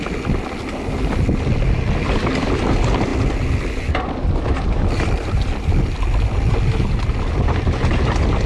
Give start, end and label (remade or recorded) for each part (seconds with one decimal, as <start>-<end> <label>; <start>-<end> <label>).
0.0-8.5 recorded